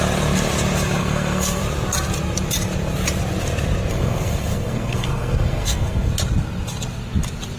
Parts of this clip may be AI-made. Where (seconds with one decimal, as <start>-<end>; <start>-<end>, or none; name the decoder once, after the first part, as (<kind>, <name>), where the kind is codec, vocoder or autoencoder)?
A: 1.0-1.6 (codec, SNAC); 3.9-6.1